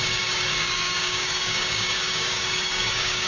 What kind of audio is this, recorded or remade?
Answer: remade